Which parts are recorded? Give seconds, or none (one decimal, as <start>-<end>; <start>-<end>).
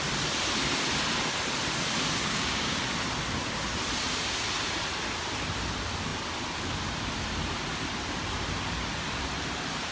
0.0-2.2; 2.8-9.9